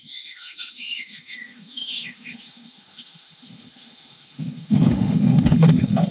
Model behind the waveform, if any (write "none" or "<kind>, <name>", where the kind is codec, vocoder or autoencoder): autoencoder, DAC-VAE